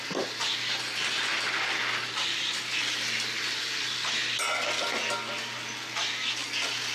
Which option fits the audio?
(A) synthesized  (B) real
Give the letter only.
B